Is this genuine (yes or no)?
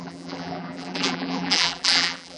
no